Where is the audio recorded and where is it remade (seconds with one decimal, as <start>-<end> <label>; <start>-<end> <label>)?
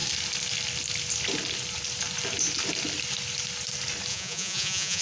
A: 0.0-4.1 recorded; 4.1-5.0 remade